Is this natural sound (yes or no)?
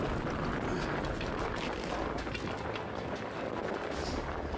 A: yes